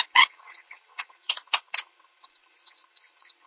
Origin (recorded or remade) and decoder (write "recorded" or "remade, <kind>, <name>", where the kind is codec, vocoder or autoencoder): remade, vocoder, WaveNeXt